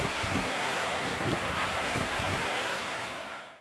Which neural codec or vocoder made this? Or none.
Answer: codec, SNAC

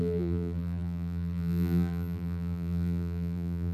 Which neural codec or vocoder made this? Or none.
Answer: vocoder, BigVGAN v2